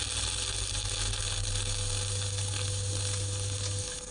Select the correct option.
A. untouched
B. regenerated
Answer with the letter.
A